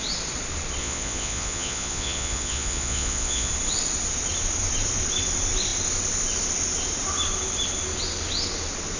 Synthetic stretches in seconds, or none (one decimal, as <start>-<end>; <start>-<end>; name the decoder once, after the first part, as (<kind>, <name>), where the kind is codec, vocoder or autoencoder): 0.8-3.5 (vocoder, Vocos)